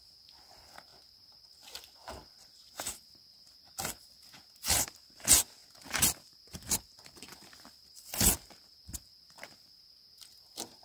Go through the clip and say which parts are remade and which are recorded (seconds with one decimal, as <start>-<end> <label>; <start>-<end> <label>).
0.0-10.8 recorded